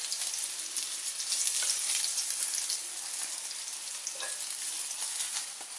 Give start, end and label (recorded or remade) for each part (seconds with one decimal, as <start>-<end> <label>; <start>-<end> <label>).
0.0-5.8 recorded